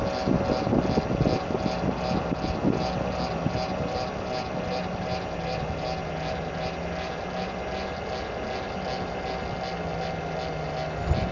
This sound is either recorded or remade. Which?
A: recorded